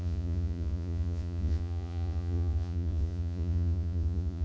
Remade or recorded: remade